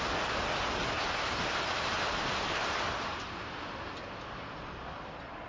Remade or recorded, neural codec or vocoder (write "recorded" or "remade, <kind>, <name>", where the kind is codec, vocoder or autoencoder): recorded